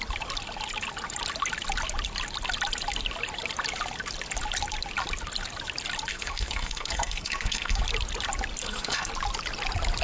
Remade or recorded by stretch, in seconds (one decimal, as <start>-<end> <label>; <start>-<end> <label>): 0.0-6.1 recorded; 6.1-7.8 remade; 7.8-8.6 recorded; 8.6-9.1 remade; 9.1-10.0 recorded